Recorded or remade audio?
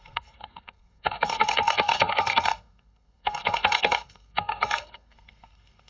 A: remade